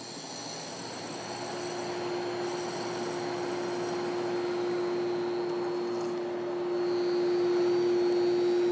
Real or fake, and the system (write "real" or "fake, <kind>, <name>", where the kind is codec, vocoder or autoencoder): real